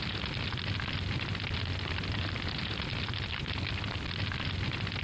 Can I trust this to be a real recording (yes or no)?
yes